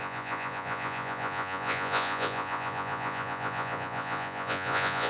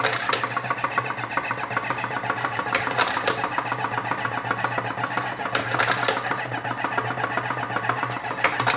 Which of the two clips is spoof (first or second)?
first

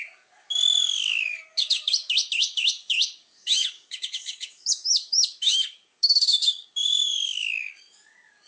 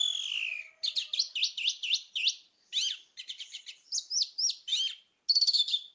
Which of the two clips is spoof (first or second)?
first